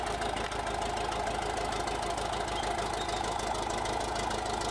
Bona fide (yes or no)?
yes